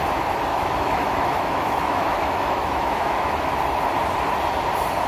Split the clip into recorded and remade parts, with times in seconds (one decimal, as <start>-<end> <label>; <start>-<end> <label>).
0.0-0.5 recorded; 0.5-3.6 remade; 3.6-5.1 recorded